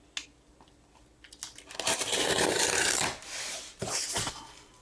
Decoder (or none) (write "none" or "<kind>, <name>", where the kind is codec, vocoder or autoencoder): none